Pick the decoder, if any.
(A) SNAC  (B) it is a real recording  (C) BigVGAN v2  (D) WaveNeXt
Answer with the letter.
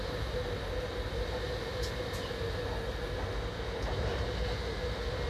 B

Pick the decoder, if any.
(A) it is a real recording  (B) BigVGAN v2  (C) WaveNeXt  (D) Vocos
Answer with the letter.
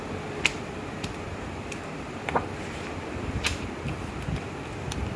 B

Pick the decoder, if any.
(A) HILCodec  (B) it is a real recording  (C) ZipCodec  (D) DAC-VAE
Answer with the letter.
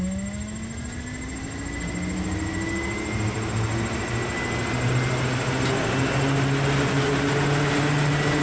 B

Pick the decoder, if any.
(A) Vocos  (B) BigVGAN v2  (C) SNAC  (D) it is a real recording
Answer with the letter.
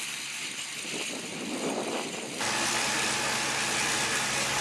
D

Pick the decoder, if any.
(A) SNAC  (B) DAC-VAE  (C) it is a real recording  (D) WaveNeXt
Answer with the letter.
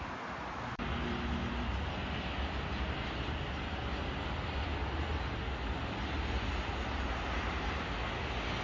C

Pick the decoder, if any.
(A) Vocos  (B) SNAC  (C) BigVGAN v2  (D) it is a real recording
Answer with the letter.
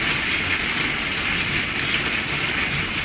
D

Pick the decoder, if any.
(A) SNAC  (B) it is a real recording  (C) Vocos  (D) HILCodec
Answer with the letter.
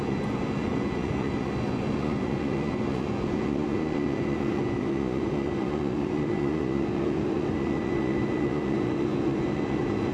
C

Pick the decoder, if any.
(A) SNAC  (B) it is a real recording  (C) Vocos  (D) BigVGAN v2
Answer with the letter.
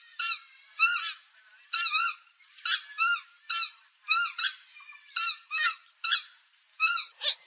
D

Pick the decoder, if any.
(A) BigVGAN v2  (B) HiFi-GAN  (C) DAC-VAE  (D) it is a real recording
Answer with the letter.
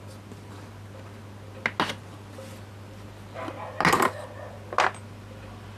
D